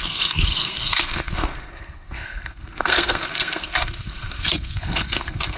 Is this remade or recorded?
remade